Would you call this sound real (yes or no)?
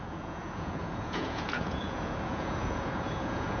no